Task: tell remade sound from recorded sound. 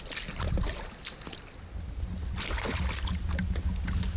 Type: recorded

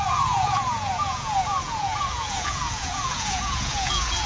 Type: remade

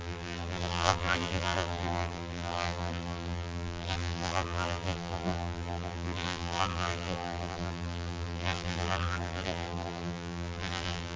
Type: remade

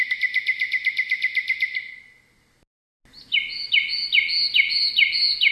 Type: recorded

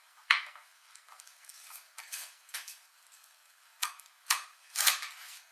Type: remade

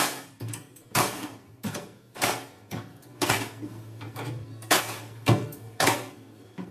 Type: remade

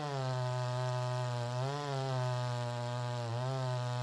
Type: recorded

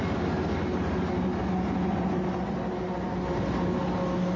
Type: recorded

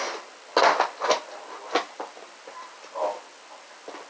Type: recorded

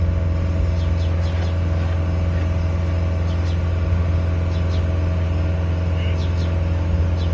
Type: recorded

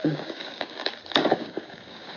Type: remade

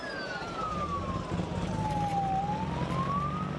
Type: recorded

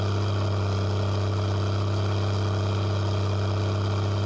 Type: recorded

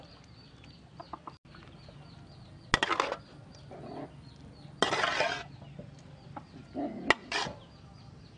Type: recorded